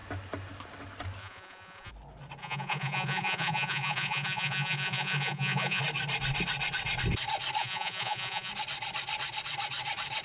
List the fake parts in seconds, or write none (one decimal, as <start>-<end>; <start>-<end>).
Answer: 1.2-1.9; 2.4-5.8; 7.6-8.5